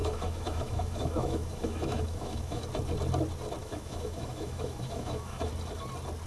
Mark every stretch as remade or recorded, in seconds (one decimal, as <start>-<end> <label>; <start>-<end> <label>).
0.0-2.6 remade; 2.6-3.6 recorded; 3.6-5.5 remade; 5.5-6.3 recorded